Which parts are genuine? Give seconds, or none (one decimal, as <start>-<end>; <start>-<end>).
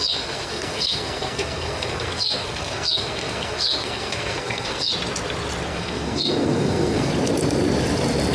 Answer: 4.9-5.7; 7.1-8.3